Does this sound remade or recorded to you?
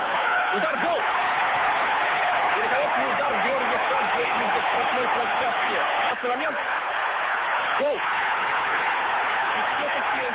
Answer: remade